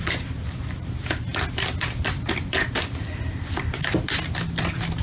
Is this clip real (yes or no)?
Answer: no